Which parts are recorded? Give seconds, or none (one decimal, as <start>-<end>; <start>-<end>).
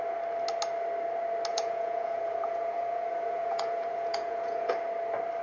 0.0-1.5; 4.7-5.4